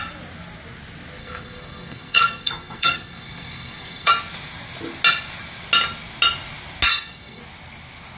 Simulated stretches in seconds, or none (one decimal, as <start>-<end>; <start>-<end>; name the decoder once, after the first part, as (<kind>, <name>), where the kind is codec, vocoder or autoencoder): 1.2-4.1 (codec, SNAC); 6.9-7.4